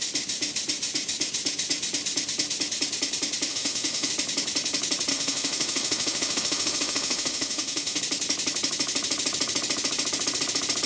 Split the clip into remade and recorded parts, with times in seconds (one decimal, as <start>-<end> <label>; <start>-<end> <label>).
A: 0.0-3.5 recorded; 3.5-4.1 remade; 4.1-5.1 recorded; 5.1-8.0 remade; 8.0-10.9 recorded